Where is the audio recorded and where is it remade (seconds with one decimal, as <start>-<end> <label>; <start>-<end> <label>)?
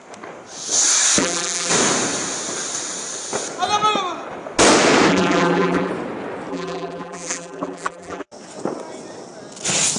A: 0.0-1.2 recorded; 1.2-1.7 remade; 1.7-5.1 recorded; 5.1-5.9 remade; 5.9-6.5 recorded; 6.5-8.3 remade; 8.3-10.0 recorded